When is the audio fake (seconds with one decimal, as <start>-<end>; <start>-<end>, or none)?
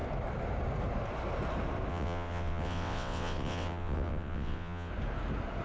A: 1.9-4.9